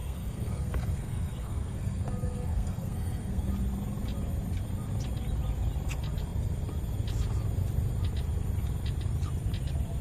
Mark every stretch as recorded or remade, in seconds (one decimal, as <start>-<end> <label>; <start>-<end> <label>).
0.0-3.5 remade; 3.5-10.0 recorded